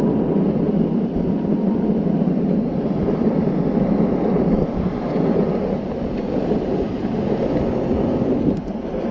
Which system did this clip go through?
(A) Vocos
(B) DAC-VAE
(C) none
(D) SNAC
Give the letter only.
C